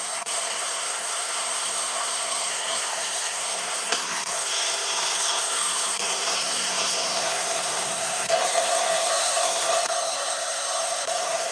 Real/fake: fake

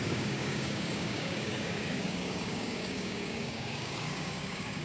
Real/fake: fake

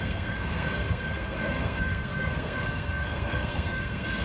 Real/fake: fake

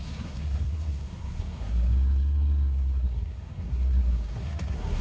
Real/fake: fake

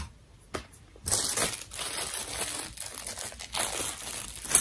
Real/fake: real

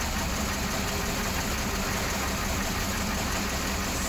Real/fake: real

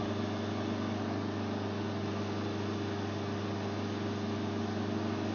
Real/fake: real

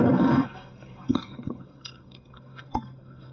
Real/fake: fake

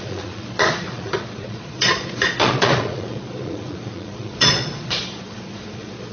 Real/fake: fake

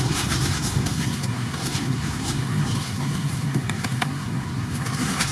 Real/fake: fake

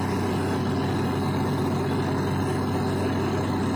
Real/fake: real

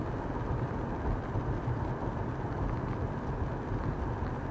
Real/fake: real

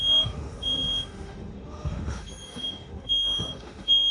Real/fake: fake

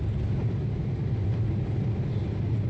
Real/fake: real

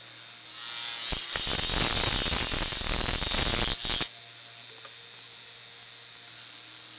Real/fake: real